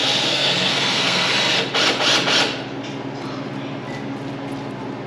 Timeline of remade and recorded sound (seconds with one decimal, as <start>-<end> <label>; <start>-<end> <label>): 0.0-1.3 remade; 1.3-5.1 recorded